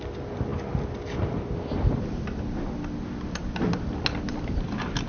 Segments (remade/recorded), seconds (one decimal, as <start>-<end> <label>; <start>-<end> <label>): 0.0-5.1 recorded